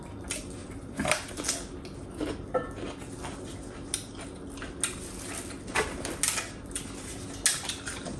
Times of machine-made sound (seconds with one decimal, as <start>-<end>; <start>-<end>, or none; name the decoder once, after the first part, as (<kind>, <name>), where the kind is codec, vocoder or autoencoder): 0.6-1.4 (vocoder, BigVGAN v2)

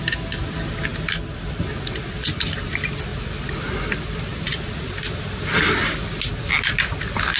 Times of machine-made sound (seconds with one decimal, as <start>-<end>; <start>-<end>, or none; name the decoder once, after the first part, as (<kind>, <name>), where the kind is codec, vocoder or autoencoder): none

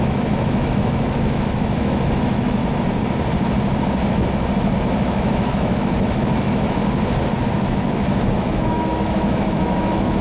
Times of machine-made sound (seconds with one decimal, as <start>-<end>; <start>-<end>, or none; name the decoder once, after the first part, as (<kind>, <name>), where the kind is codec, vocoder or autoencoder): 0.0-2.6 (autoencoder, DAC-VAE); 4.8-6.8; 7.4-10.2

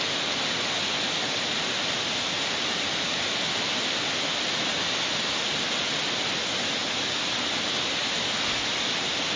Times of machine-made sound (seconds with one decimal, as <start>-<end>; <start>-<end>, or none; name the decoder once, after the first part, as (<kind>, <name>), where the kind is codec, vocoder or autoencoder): none

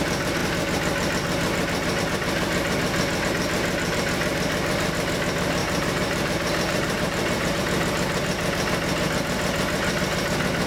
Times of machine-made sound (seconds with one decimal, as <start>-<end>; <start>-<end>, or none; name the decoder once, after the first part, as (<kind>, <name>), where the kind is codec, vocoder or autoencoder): 5.6-7.6 (vocoder, BigVGAN v2)

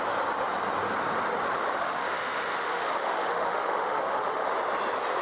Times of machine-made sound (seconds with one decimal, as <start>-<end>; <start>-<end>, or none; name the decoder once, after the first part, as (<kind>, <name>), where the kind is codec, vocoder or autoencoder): 1.8-4.5 (autoencoder, DAC-VAE)

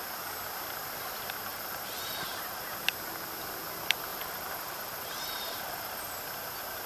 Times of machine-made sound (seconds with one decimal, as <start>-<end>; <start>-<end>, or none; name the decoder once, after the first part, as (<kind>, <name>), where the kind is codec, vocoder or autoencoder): 1.5-2.6 (vocoder, BigVGAN v2); 4.1-6.1